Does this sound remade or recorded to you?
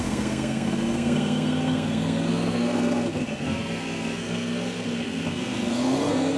remade